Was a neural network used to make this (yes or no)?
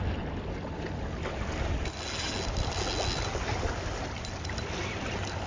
no